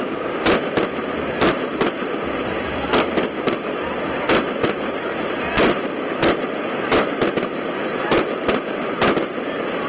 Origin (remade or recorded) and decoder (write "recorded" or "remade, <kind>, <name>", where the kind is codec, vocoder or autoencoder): recorded